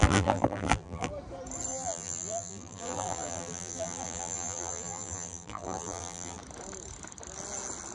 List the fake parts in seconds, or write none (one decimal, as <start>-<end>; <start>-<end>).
0.0-1.1; 1.7-6.4